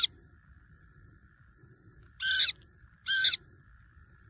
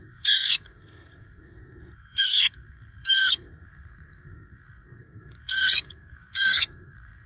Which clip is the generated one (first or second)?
second